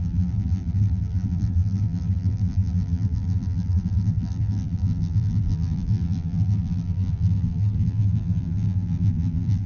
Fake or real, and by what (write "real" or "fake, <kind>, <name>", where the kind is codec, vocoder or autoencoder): fake, vocoder, BigVGAN v2